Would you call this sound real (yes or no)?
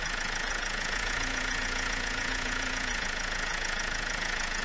no